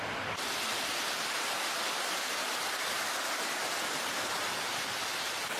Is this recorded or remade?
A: recorded